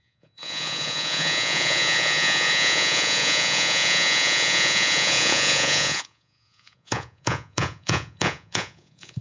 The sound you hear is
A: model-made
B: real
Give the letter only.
A